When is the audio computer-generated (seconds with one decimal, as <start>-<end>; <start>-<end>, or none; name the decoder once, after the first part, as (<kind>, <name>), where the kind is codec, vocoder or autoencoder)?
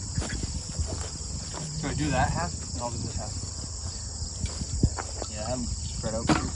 0.0-3.9 (vocoder, BigVGAN v2); 4.7-6.5